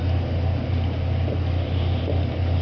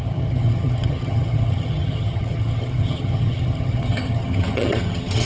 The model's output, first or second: second